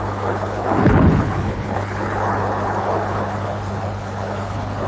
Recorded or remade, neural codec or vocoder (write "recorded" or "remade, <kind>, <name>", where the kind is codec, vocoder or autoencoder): remade, codec, HILCodec